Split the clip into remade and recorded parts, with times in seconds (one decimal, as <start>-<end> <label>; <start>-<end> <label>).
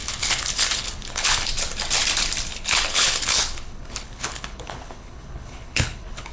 0.0-1.5 remade; 1.5-2.5 recorded; 2.5-6.3 remade